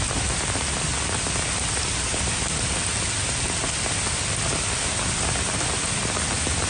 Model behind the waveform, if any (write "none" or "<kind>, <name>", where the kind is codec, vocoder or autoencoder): none